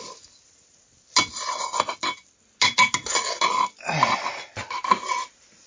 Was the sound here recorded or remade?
recorded